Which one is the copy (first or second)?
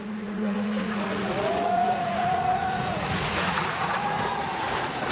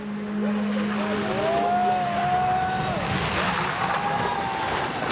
first